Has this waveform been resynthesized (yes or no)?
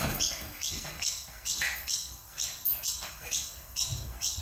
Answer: yes